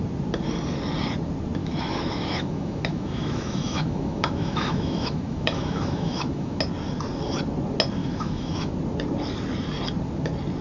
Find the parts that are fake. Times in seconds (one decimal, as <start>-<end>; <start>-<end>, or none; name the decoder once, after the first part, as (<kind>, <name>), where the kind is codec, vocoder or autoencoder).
1.6-6.6 (autoencoder, DAC-VAE); 8.0-8.7